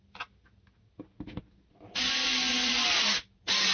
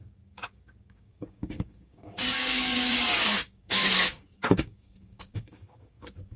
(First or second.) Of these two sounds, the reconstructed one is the second